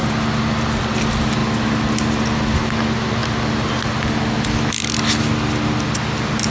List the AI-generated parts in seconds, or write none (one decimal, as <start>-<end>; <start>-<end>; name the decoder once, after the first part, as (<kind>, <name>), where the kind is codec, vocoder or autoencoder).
none